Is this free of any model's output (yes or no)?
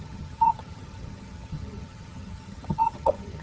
no